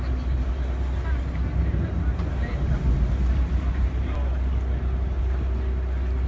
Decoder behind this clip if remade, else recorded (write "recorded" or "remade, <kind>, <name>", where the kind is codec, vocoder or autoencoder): recorded